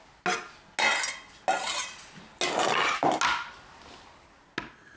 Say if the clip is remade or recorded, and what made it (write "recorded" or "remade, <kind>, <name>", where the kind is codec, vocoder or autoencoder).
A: recorded